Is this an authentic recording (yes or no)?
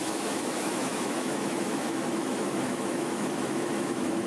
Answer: no